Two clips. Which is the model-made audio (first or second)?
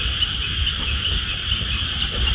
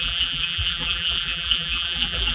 second